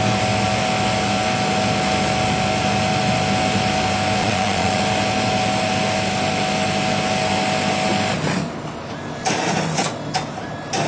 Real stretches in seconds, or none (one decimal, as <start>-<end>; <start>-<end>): 0.0-4.2; 4.8-10.9